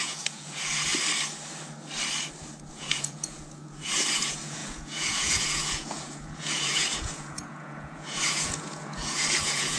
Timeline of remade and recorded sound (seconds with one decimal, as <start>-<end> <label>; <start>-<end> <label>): 0.0-0.9 remade; 0.9-2.7 recorded; 2.7-9.8 remade